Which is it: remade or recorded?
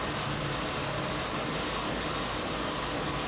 recorded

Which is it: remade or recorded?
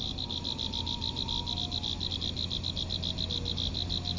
recorded